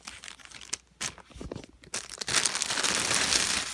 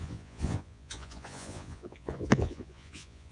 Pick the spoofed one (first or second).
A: second